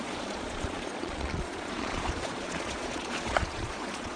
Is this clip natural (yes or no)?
no